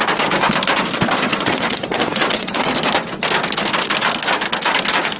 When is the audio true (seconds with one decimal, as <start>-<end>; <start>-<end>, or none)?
0.0-1.3; 2.7-5.2